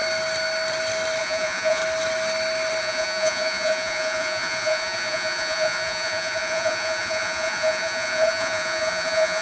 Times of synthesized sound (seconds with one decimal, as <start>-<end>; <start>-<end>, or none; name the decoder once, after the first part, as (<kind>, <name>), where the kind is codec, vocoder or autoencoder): 1.2-1.8 (vocoder, Vocos); 2.8-9.4